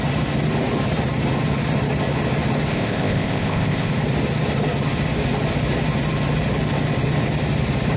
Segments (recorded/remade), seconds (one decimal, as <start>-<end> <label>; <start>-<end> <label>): 0.0-2.7 recorded; 2.7-3.9 remade; 3.9-8.0 recorded